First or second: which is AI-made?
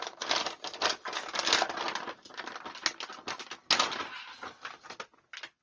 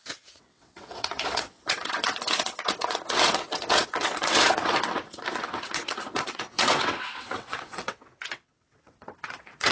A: second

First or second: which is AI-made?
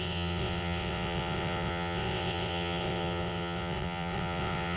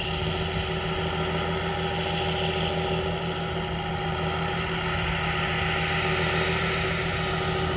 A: first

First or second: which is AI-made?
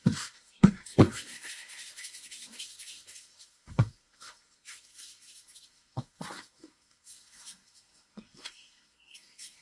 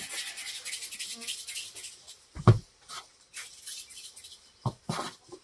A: first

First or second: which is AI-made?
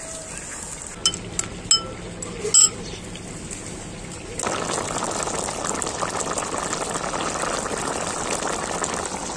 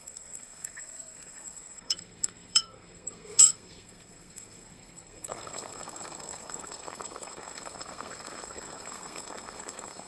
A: second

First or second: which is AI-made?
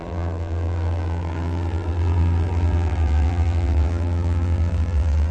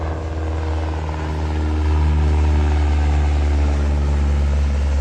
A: first